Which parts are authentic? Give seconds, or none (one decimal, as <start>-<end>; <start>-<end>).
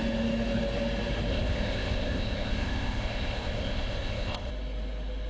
0.0-1.3; 4.5-5.3